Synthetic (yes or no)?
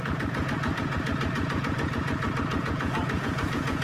yes